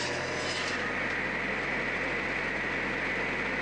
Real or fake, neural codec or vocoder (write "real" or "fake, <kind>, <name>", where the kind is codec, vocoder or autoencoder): real